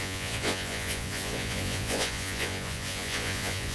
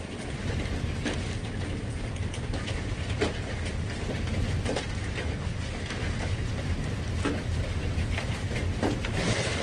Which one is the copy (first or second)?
first